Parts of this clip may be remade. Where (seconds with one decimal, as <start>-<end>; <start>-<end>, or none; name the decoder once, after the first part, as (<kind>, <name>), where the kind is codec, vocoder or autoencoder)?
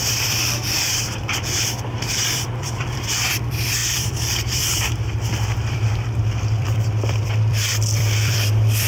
0.0-8.9 (vocoder, BigVGAN v2)